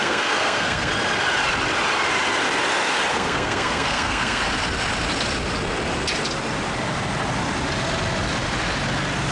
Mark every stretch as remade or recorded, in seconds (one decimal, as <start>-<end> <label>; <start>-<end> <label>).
0.0-0.9 remade; 0.9-3.1 recorded; 3.1-4.4 remade; 4.4-9.3 recorded